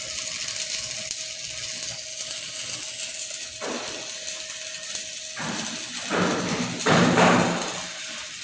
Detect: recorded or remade recorded